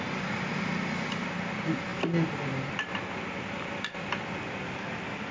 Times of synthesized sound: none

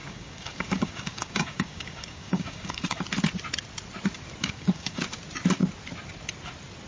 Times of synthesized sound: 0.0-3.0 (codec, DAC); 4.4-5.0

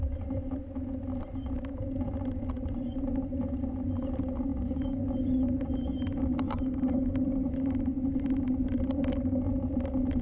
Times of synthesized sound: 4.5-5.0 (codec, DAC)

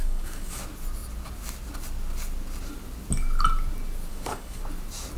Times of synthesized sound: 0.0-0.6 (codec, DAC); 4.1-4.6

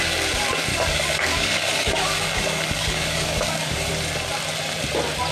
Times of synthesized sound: 0.7-3.9 (codec, DAC)

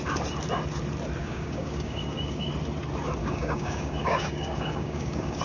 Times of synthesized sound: 1.2-2.5 (codec, DAC); 3.2-5.4

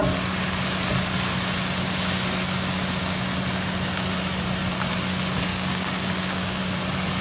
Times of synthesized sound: 5.5-6.6 (codec, DAC)

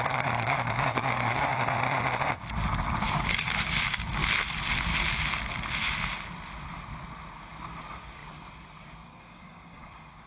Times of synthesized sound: 0.0-1.5 (codec, DAC); 2.8-4.2; 7.8-8.2; 8.8-10.3